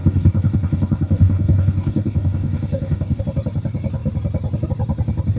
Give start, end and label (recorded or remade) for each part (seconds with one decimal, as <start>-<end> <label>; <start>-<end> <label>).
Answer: 0.0-3.2 remade; 3.2-5.4 recorded